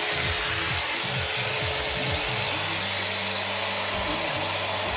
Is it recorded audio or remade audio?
recorded